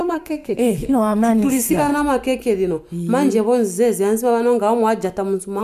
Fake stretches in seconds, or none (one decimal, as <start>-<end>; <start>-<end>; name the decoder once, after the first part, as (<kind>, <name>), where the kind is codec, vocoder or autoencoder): 0.0-1.9 (codec, SNAC)